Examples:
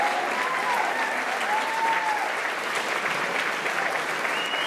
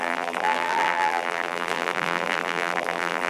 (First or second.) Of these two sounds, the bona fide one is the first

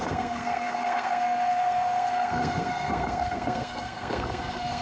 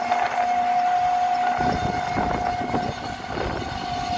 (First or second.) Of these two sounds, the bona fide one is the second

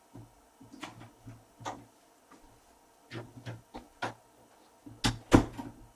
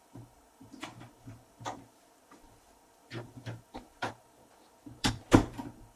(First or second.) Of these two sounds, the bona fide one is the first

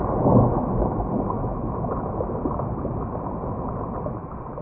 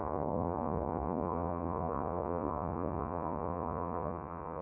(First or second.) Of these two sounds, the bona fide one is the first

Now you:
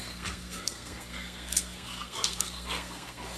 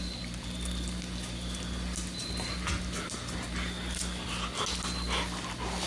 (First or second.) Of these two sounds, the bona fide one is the second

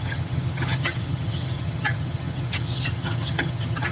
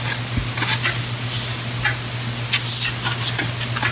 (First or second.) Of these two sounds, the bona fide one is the second